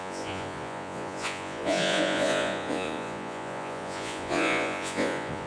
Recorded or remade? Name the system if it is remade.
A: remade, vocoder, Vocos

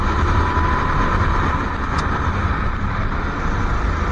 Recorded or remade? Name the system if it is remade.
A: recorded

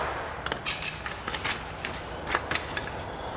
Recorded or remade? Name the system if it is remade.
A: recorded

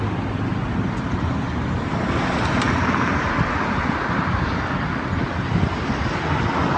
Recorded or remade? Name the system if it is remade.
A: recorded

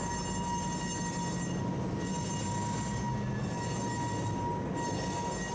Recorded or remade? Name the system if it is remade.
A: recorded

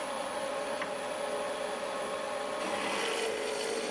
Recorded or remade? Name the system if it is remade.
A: recorded